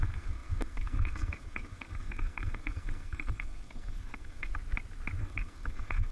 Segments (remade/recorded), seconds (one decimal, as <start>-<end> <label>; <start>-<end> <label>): 0.0-4.5 remade; 4.5-5.2 recorded; 5.2-6.1 remade